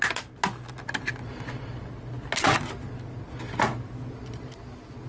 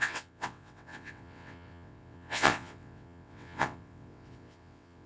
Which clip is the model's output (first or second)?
second